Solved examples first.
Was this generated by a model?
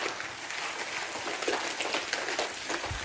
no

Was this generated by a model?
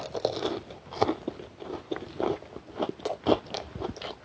no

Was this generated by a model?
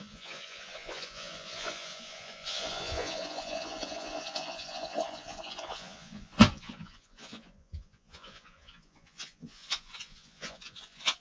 yes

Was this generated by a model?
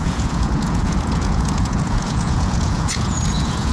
yes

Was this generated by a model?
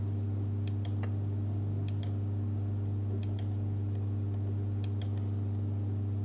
no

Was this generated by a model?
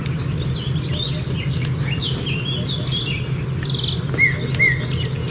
no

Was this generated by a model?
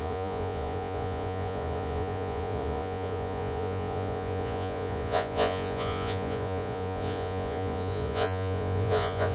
yes